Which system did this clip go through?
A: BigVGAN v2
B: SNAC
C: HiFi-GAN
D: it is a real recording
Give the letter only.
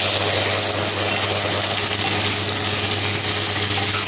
D